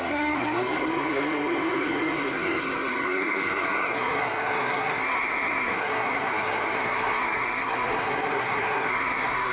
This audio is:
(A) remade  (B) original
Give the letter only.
A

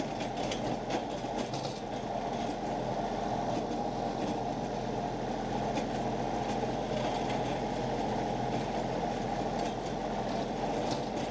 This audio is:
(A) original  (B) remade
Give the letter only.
A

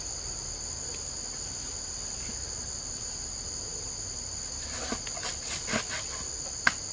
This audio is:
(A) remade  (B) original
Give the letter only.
B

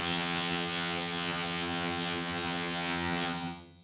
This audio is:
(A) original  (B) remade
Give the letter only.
B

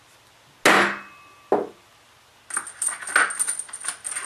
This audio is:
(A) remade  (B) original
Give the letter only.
B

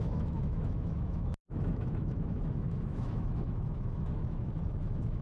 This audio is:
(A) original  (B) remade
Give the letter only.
B